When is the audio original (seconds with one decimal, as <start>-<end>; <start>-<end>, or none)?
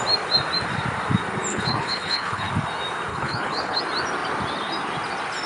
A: 0.0-1.5; 2.5-3.1; 3.8-5.5